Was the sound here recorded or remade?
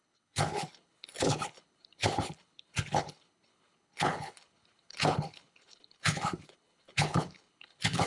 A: remade